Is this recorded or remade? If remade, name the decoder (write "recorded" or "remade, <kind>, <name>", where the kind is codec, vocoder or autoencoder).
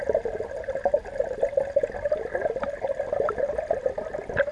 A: recorded